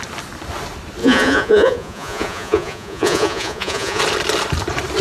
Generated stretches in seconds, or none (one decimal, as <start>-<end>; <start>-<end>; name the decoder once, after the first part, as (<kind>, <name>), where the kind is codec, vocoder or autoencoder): 1.0-4.0 (vocoder, Vocos)